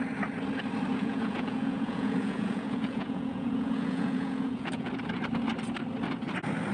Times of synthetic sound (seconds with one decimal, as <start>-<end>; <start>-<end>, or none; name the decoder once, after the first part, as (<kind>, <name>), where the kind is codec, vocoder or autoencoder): 0.9-4.9 (vocoder, Vocos)